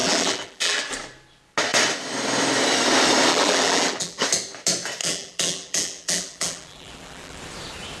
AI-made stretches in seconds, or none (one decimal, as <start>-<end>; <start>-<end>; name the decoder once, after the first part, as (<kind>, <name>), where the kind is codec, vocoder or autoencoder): 0.0-0.8 (vocoder, BigVGAN v2); 3.3-4.2; 5.0-7.4